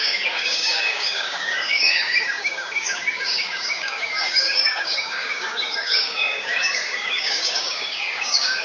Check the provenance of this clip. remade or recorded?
remade